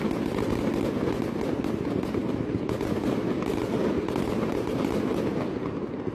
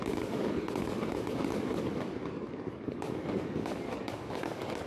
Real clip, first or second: first